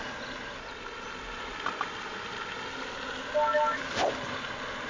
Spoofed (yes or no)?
no